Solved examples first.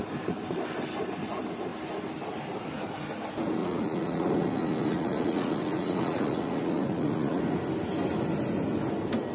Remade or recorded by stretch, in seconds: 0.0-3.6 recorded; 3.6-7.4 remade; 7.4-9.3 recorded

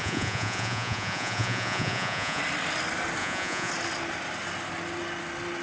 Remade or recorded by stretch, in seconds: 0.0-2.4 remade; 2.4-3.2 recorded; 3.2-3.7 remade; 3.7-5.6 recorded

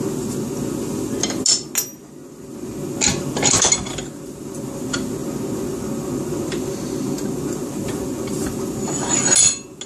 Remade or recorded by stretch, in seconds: 0.0-9.9 recorded

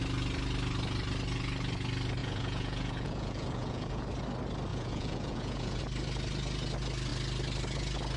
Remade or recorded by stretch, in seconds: 0.0-2.2 recorded; 2.2-4.0 remade; 4.0-4.7 recorded; 4.7-5.8 remade; 5.8-8.2 recorded